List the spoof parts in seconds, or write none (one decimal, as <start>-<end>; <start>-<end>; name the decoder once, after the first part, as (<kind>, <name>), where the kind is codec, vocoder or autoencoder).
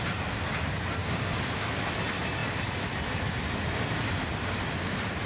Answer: 1.0-1.7 (codec, DAC)